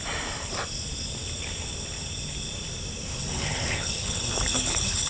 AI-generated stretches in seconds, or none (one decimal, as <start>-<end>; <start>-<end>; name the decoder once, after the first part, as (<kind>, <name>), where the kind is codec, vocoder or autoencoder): 3.1-5.1 (codec, HILCodec)